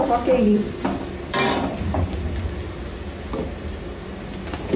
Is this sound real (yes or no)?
yes